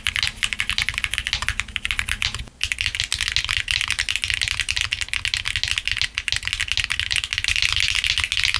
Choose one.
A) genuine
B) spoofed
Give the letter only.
A